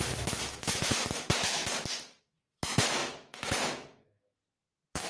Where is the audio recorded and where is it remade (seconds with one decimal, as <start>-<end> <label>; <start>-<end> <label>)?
0.0-1.6 remade; 1.6-2.2 recorded; 2.2-5.1 remade